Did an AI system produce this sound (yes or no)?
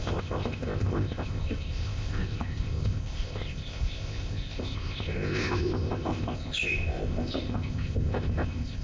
yes